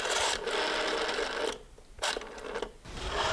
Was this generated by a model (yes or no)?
no